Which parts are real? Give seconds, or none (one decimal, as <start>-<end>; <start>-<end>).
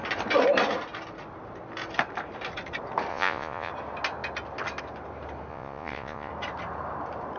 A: 0.0-3.1; 3.7-5.5; 6.3-7.4